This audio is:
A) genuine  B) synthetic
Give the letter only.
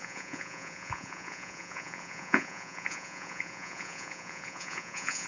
B